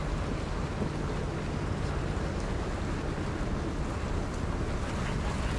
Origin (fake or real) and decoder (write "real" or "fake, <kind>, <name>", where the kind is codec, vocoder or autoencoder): real